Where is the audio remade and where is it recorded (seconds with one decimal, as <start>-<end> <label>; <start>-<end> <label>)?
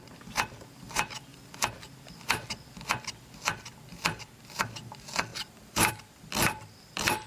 0.0-5.3 recorded; 5.3-5.9 remade; 5.9-7.3 recorded